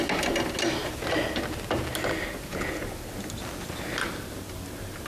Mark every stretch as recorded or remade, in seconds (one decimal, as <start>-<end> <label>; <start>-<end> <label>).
0.0-5.1 recorded